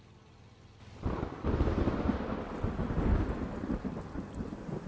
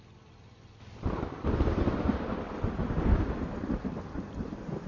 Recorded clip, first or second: first